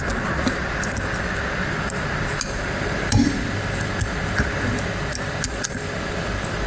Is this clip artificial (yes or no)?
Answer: no